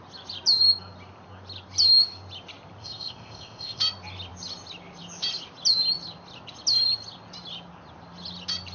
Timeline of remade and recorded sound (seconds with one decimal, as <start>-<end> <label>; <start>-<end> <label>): 0.0-2.8 recorded; 2.8-3.8 remade; 3.8-8.7 recorded